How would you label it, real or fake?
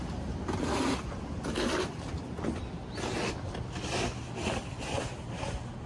real